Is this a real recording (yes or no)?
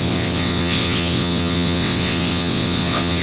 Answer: no